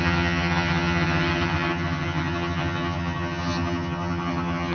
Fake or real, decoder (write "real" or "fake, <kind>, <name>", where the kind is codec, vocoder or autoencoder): fake, vocoder, HiFi-GAN